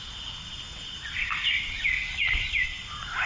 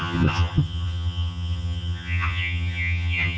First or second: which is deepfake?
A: second